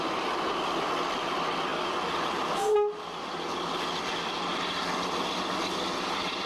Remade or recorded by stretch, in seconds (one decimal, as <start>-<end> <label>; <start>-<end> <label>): 0.0-6.5 recorded